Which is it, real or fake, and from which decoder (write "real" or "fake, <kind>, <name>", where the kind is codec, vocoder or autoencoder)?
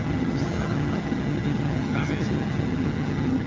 fake, vocoder, HiFi-GAN